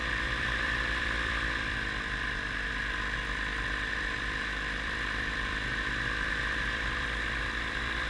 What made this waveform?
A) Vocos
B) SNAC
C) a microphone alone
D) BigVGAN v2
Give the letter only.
D